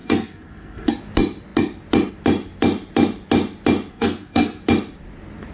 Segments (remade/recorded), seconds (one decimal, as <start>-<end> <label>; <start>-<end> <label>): 0.0-0.9 remade; 0.9-3.9 recorded; 3.9-4.6 remade; 4.6-5.5 recorded